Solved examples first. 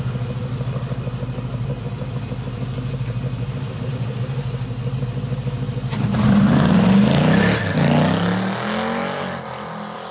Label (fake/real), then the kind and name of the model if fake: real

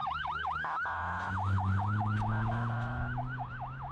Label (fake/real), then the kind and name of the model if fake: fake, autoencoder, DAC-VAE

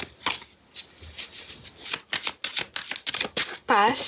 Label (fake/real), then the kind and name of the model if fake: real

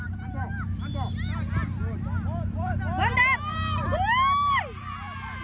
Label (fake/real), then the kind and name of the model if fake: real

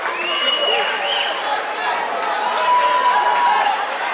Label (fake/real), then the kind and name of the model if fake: real